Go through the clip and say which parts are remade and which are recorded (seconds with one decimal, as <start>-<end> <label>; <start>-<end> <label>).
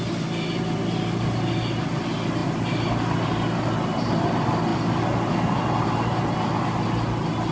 0.0-7.5 recorded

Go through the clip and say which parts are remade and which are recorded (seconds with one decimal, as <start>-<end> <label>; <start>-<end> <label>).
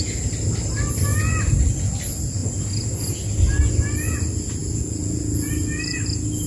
0.0-4.6 recorded; 4.6-5.5 remade; 5.5-6.5 recorded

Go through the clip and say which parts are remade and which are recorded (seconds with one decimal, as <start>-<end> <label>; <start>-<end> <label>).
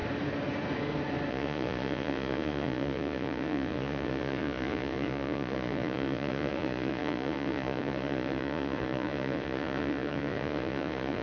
0.0-1.3 recorded; 1.3-11.2 remade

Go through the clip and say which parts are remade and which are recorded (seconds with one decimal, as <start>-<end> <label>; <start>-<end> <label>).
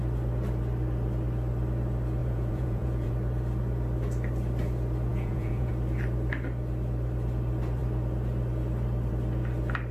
0.0-2.2 recorded; 2.2-3.1 remade; 3.1-5.1 recorded; 5.1-5.7 remade; 5.7-9.9 recorded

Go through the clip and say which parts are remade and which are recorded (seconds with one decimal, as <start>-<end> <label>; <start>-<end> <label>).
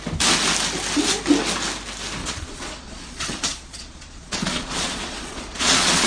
0.0-2.2 recorded; 2.2-6.1 remade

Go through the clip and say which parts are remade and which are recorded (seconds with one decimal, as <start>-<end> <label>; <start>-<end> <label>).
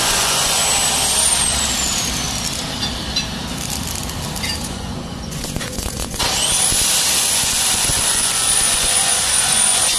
0.0-0.6 remade; 0.6-4.6 recorded; 4.6-6.2 remade; 6.2-7.2 recorded; 7.2-10.0 remade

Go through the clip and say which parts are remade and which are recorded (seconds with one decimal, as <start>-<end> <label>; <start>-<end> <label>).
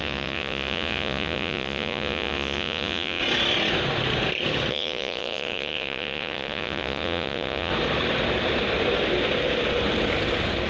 0.0-3.2 remade; 3.2-4.7 recorded; 4.7-7.7 remade; 7.7-10.7 recorded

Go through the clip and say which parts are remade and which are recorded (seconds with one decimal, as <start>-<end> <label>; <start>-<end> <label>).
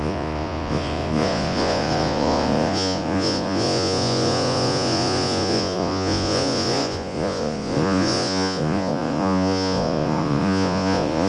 0.0-11.3 remade